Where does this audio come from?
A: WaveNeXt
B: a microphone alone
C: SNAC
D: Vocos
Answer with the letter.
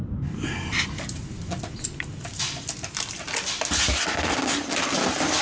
B